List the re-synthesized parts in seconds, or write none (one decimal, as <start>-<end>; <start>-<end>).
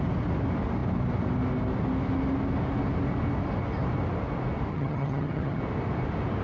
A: 4.7-5.6